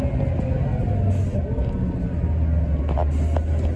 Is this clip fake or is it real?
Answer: real